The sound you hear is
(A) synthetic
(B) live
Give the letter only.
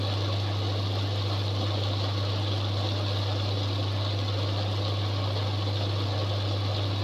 B